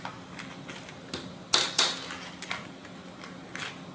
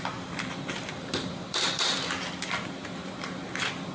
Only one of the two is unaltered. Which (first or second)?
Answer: first